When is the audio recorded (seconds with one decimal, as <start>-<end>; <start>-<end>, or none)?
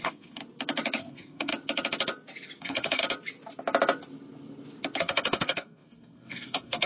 0.4-1.0; 1.5-2.6; 3.0-5.0